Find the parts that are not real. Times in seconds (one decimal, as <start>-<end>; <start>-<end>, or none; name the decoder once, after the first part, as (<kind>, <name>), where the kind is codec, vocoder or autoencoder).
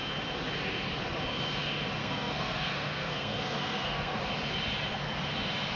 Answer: 2.0-4.2 (codec, SNAC)